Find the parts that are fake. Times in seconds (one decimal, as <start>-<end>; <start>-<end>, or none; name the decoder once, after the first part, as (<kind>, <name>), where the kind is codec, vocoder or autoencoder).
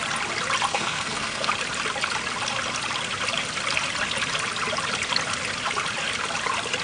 0.7-1.5 (codec, SNAC)